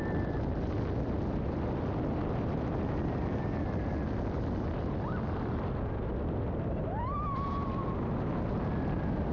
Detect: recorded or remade recorded